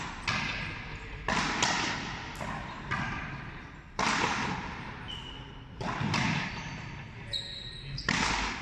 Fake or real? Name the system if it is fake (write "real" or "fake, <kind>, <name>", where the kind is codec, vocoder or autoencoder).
real